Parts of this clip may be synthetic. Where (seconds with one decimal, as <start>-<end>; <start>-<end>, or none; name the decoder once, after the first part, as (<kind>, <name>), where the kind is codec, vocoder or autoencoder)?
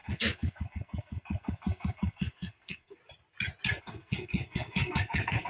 0.0-3.0 (codec, SNAC); 3.8-5.5